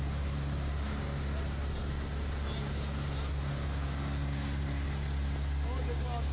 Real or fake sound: real